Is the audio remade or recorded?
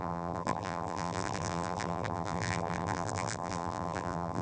remade